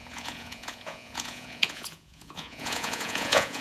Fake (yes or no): yes